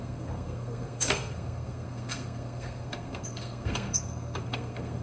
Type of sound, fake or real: fake